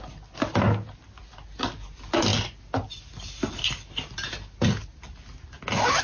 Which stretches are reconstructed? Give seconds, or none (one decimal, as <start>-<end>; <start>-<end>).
none